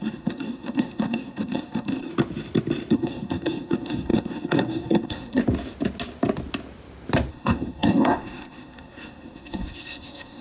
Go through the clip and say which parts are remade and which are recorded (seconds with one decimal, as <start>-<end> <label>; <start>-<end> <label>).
0.0-2.1 remade; 2.1-2.9 recorded; 2.9-5.4 remade; 5.4-7.3 recorded; 7.3-10.4 remade